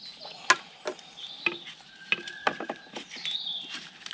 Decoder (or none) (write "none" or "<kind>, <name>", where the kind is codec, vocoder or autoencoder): none